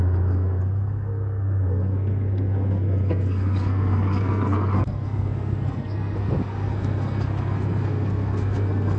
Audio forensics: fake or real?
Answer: fake